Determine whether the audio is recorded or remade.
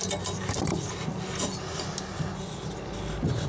recorded